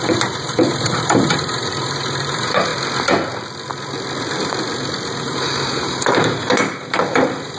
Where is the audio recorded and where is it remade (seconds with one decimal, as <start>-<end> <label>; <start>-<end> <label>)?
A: 0.0-2.7 remade; 2.7-5.2 recorded; 5.2-7.6 remade